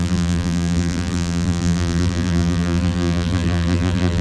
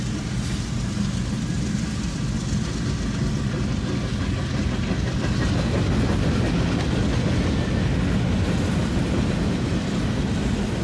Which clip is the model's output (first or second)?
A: first